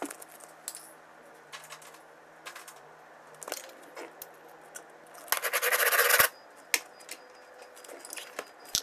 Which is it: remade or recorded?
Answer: recorded